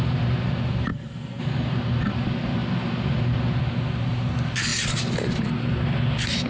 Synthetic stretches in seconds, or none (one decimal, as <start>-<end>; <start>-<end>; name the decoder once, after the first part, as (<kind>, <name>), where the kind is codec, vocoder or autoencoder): 0.9-1.4 (codec, SNAC)